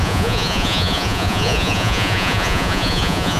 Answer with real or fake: fake